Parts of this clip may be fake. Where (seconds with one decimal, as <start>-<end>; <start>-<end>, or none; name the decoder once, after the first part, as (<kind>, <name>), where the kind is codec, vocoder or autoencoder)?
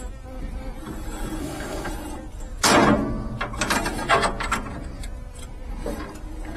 1.4-1.9 (codec, SNAC)